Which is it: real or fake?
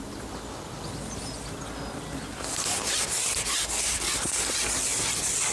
real